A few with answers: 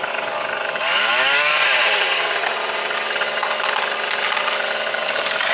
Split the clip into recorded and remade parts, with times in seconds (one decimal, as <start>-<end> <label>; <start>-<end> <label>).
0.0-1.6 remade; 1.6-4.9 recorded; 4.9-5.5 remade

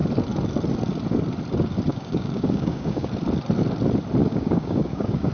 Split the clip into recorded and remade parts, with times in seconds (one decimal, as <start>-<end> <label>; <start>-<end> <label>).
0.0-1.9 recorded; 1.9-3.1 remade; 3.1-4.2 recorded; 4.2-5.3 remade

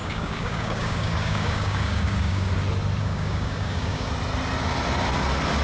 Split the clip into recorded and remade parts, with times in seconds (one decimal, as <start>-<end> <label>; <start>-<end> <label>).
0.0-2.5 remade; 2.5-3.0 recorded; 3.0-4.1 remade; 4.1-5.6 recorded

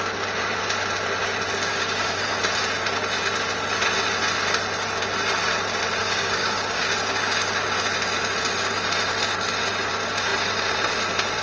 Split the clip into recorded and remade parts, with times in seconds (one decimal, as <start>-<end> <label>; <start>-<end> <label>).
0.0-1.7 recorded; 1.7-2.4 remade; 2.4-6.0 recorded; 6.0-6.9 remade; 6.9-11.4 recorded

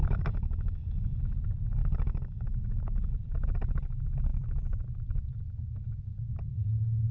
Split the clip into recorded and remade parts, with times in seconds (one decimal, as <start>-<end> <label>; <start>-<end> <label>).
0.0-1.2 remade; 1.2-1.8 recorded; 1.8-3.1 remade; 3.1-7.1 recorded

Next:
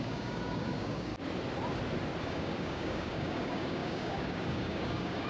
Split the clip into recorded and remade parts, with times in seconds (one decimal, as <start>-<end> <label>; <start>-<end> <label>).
0.0-1.1 remade; 1.1-2.2 recorded; 2.2-5.3 remade